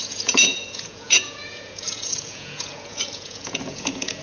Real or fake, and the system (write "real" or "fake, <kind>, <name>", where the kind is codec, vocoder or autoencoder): fake, vocoder, Vocos